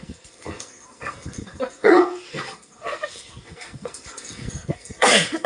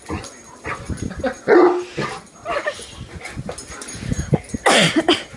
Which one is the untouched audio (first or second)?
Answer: second